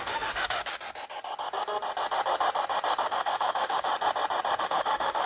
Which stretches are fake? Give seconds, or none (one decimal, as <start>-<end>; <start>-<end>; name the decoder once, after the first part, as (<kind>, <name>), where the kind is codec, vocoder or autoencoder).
0.0-0.6 (autoencoder, DAC-VAE); 3.0-3.9; 4.6-5.3